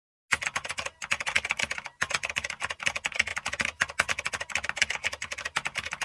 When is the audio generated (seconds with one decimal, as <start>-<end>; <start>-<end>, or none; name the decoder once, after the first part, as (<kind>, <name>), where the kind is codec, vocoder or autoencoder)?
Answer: none